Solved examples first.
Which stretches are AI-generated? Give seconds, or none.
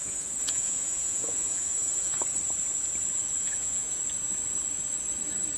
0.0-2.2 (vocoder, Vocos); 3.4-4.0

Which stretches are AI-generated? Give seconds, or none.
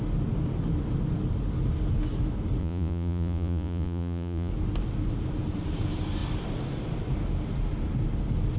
2.6-4.5 (vocoder, Vocos)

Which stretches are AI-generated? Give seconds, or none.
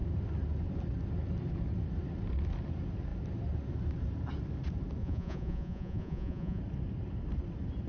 5.0-6.6 (vocoder, Vocos)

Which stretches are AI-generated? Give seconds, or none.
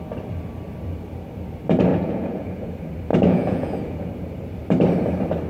1.9-2.7 (vocoder, Vocos); 3.1-4.1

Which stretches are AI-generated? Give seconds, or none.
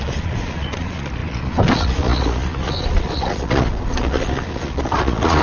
0.0-5.4 (vocoder, Vocos)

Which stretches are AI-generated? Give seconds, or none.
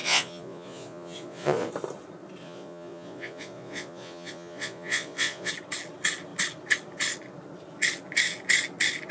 0.0-1.7 (vocoder, Vocos); 2.4-5.5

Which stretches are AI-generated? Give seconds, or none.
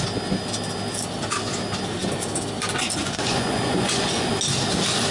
3.0-4.3 (vocoder, Vocos)